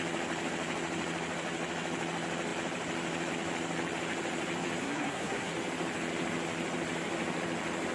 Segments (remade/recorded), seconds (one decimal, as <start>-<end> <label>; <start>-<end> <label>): 0.0-4.8 recorded; 4.8-5.5 remade; 5.5-7.9 recorded